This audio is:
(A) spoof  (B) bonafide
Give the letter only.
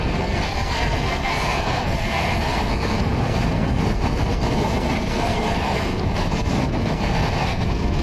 A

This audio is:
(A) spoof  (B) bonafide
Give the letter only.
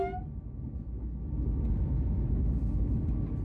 B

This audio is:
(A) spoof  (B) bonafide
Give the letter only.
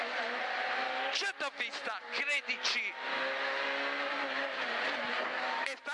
B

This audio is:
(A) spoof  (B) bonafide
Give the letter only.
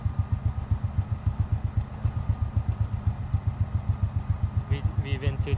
B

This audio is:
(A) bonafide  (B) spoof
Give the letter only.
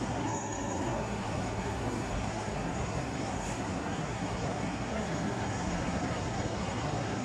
B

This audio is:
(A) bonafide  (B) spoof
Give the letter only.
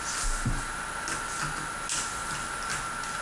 A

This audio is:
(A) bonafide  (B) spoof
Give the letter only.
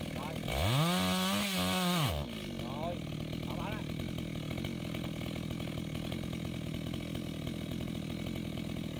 A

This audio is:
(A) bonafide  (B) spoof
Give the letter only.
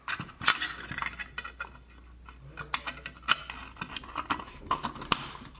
A